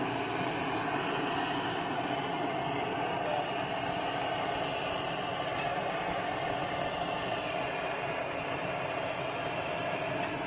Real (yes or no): yes